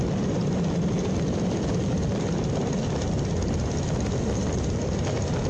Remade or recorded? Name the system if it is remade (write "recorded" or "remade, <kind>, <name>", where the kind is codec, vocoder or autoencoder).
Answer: recorded